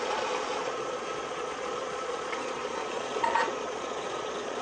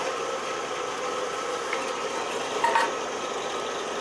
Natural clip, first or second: second